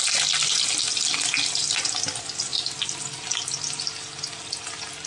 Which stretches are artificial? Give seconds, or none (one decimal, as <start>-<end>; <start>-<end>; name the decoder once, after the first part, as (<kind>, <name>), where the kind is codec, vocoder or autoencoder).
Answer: none